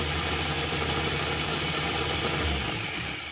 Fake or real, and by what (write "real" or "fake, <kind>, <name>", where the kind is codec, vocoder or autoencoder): real